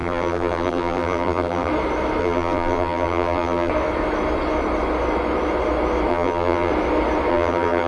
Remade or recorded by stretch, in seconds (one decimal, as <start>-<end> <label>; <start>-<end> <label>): 0.0-1.7 remade; 1.7-2.2 recorded; 2.2-3.7 remade; 3.7-6.1 recorded; 6.1-6.7 remade; 6.7-7.3 recorded; 7.3-7.9 remade